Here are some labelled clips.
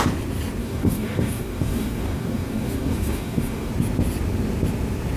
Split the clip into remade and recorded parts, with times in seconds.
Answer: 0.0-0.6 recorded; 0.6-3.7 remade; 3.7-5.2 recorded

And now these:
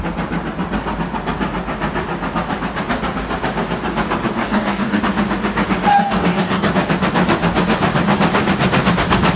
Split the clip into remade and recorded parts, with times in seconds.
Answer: 0.0-4.4 recorded; 4.4-5.0 remade; 5.0-5.9 recorded; 5.9-6.7 remade; 6.7-9.4 recorded

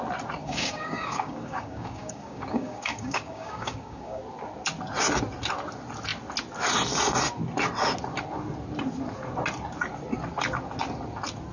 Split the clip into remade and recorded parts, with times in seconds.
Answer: 0.0-0.4 recorded; 0.4-4.2 remade; 4.2-11.5 recorded

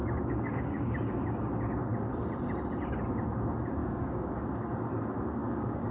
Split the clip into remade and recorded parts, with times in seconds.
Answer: 0.0-1.1 remade; 1.1-3.8 recorded; 3.8-4.4 remade; 4.4-5.4 recorded; 5.4-5.9 remade